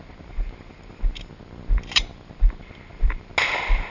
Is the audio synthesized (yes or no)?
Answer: no